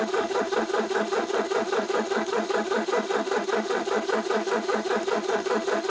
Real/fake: fake